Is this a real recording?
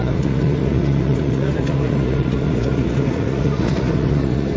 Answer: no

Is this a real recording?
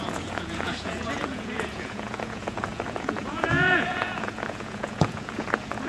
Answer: no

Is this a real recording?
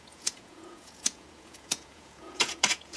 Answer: no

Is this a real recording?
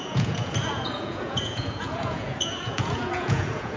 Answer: no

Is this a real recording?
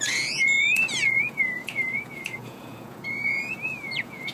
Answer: no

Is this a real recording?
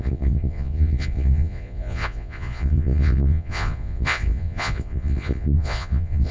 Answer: no